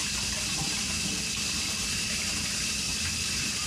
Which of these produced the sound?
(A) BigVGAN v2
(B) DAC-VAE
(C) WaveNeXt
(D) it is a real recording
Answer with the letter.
A